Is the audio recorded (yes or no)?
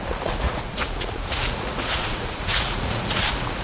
no